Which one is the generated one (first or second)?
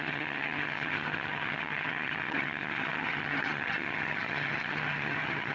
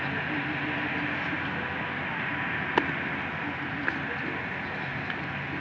first